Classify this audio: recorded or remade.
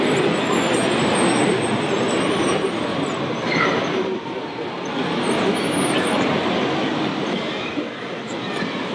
recorded